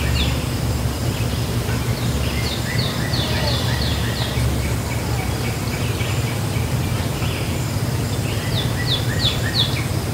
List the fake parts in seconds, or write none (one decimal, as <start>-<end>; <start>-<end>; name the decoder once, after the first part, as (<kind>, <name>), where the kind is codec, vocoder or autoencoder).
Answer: none